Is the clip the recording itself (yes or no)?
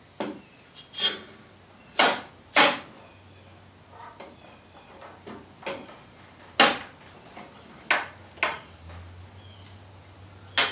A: yes